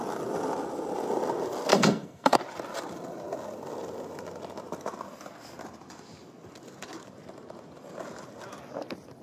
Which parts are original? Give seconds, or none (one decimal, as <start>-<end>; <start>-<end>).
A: 0.0-1.7; 2.4-9.2